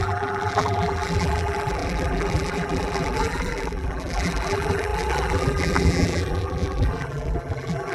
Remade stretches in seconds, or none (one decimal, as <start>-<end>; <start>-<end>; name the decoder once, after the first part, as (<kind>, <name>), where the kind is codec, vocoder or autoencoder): 0.0-7.9 (vocoder, BigVGAN v2)